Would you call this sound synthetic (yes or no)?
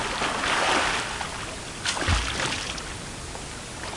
no